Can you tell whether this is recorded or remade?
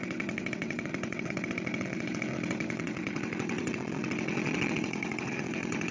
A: remade